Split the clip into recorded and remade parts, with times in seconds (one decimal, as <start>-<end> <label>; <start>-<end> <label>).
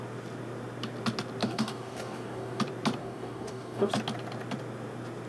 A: 0.0-1.4 recorded; 1.4-2.6 remade; 2.6-3.0 recorded; 3.0-3.9 remade; 3.9-5.3 recorded